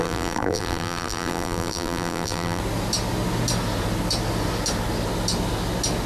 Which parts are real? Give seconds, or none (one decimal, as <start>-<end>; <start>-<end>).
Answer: 2.6-6.1